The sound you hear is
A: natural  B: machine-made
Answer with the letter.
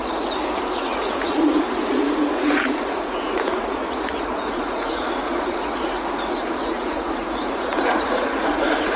B